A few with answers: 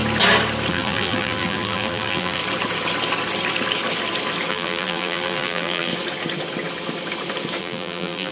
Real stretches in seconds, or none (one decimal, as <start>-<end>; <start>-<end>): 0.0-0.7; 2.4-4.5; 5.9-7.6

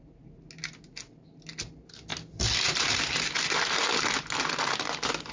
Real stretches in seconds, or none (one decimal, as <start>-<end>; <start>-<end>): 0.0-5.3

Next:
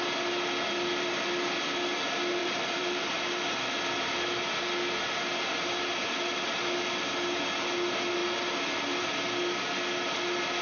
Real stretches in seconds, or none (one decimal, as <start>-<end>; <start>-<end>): 0.0-2.4; 3.0-10.6

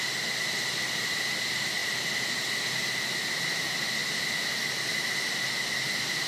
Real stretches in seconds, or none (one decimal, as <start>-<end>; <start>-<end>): 0.0-6.3

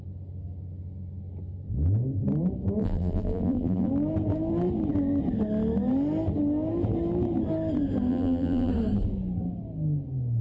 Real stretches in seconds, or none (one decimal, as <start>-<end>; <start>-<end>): 0.0-2.8; 3.9-8.1; 8.7-10.4